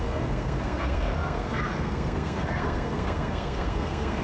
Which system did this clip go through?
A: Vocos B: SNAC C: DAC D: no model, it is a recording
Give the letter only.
B